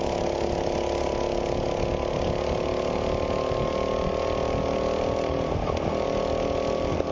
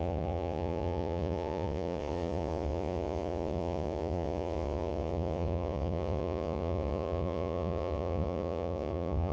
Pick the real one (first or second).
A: first